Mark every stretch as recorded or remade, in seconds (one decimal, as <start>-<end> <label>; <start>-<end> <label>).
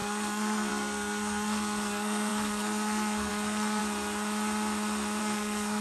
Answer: 0.0-3.8 remade; 3.8-5.2 recorded; 5.2-5.8 remade